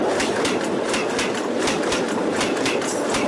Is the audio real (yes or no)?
yes